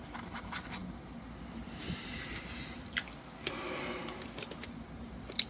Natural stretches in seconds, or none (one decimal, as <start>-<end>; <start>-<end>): 0.0-5.5